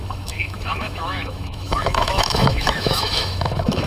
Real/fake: fake